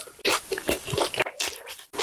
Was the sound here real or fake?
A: fake